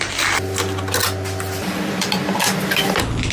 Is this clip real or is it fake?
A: real